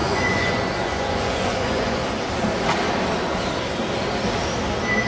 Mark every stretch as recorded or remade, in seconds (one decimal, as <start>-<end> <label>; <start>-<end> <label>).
0.0-2.0 remade; 2.0-5.1 recorded